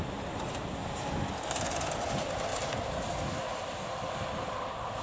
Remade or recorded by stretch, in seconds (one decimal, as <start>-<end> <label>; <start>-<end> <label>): 0.0-5.0 recorded